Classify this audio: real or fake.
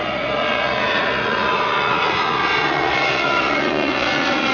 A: fake